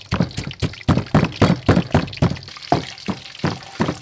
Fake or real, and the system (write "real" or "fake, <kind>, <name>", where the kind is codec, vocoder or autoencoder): real